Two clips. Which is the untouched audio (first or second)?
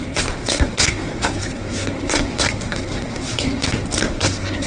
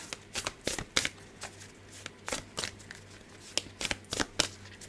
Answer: second